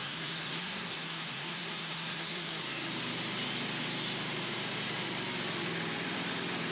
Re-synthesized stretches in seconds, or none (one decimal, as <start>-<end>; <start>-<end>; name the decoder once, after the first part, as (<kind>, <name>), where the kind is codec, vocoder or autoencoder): 0.0-2.6 (codec, SNAC)